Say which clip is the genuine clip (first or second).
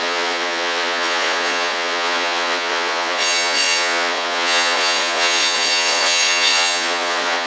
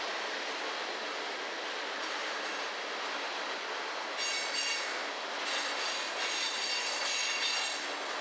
second